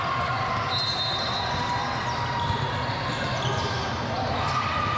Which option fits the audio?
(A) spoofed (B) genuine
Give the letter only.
B